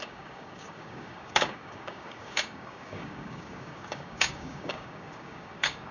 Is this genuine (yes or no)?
no